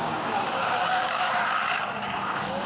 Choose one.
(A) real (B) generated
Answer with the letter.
B